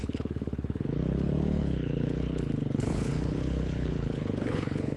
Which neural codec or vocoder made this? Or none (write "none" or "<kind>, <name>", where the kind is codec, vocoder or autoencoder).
codec, HILCodec